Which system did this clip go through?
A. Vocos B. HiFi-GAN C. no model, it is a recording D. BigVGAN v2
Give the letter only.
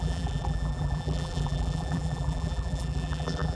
D